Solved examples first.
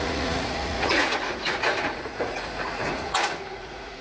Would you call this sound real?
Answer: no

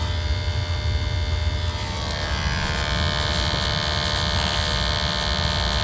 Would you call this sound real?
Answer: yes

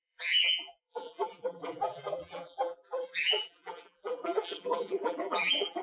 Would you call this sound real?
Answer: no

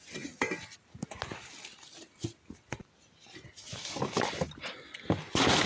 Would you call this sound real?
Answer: yes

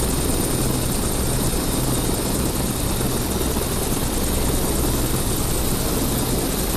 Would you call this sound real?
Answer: yes